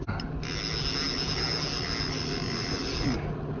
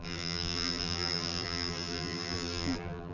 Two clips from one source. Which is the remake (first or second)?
second